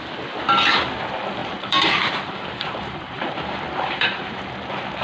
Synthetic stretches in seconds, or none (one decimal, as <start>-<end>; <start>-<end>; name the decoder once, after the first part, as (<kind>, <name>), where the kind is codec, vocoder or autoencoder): 1.4-4.4 (vocoder, BigVGAN v2)